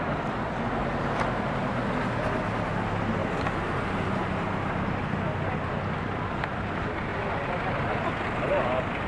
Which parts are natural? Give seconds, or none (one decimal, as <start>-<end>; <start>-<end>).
0.0-0.8; 1.8-3.2; 4.5-9.1

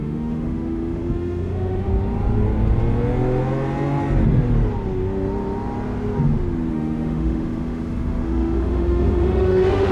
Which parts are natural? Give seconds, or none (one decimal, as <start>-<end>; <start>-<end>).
1.9-6.7

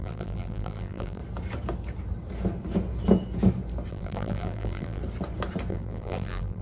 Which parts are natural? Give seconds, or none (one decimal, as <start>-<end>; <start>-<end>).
1.2-3.9; 5.0-5.7

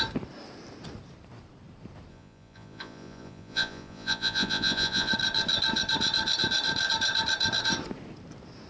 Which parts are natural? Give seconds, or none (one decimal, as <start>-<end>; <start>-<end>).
0.0-2.1; 5.1-8.7

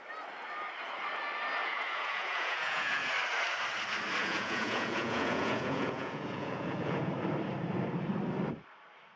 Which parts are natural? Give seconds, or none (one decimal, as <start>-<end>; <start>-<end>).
0.0-1.6; 3.1-4.2; 7.1-9.2

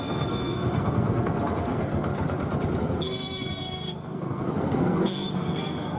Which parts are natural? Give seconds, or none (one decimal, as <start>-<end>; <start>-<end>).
2.1-2.8

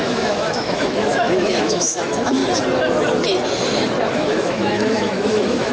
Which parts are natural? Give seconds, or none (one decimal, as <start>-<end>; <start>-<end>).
2.4-4.1

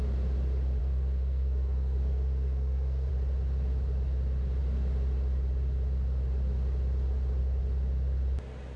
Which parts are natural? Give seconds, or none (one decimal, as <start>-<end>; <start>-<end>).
0.0-0.8; 3.1-8.8